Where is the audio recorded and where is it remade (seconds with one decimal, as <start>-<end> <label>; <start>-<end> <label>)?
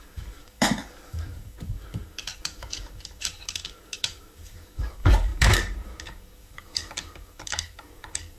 0.0-8.4 remade